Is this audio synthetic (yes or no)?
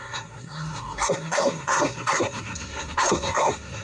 yes